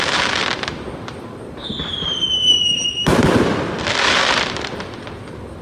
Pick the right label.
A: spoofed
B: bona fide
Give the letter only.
B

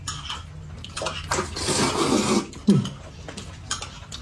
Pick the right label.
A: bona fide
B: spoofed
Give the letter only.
A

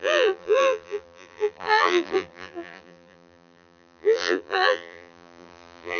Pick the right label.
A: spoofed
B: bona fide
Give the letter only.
A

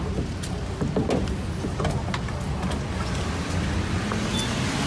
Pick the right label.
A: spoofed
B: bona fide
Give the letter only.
B